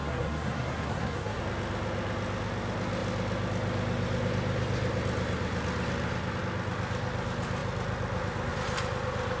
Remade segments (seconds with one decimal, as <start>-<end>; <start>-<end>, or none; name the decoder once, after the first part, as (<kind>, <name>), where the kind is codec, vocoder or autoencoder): 0.0-1.4 (codec, SNAC)